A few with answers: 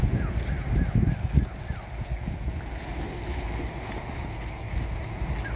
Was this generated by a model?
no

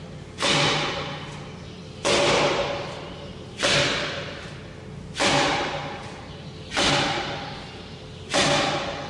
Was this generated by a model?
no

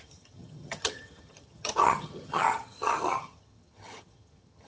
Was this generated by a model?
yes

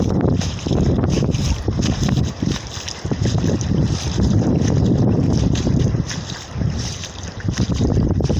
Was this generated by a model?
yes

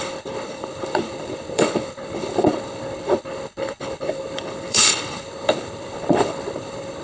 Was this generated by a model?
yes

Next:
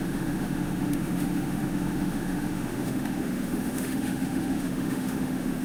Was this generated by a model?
yes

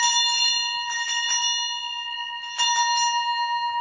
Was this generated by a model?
no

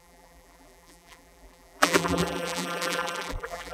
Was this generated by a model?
yes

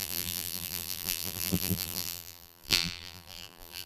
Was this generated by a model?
yes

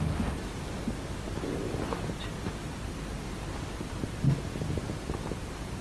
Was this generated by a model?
no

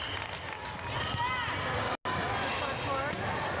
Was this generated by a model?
no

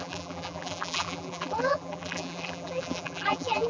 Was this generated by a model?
yes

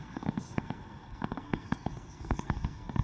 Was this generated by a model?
yes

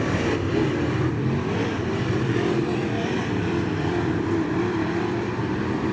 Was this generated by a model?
yes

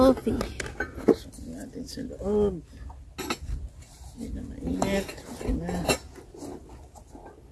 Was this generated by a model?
no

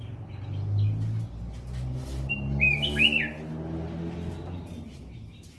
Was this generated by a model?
no